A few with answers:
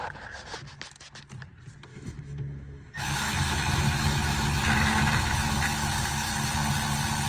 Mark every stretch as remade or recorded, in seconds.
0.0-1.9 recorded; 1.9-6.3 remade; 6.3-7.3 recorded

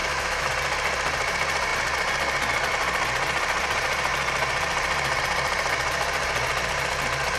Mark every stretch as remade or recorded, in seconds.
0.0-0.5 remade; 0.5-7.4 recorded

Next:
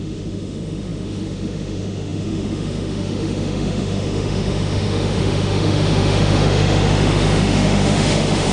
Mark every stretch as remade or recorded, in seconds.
0.0-8.5 remade

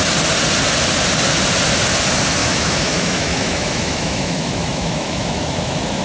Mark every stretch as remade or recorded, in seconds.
0.0-2.4 recorded; 2.4-6.0 remade

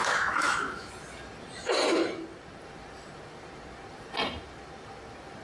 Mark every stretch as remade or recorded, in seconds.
0.0-0.9 remade; 0.9-5.4 recorded